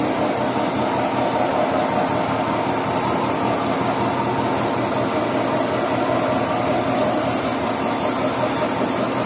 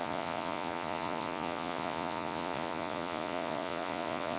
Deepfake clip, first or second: second